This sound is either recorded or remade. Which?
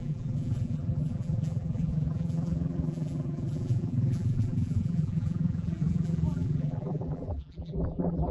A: remade